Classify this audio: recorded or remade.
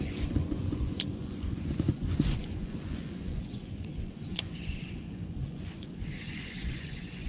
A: remade